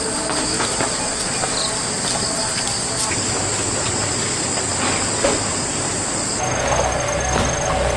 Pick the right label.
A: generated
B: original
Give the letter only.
B